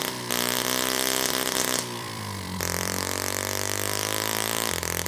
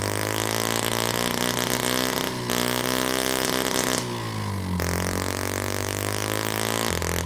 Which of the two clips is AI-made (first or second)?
first